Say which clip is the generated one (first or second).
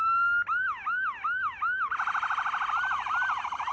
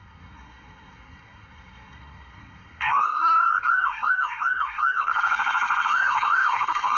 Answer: second